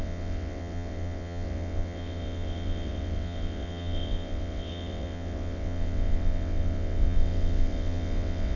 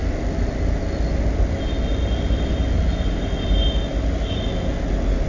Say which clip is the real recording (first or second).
second